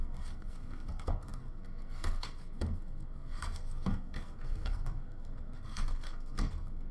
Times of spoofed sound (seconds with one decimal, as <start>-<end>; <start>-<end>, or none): 0.0-6.9